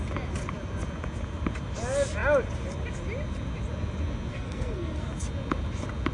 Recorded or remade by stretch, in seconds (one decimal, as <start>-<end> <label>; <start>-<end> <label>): 0.0-4.3 recorded; 4.3-5.1 remade; 5.1-6.1 recorded